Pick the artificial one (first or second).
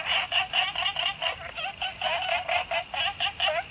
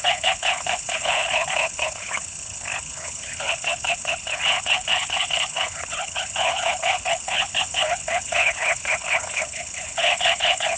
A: second